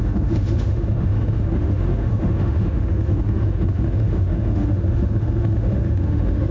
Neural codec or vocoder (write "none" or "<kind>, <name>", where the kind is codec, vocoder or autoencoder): autoencoder, DAC-VAE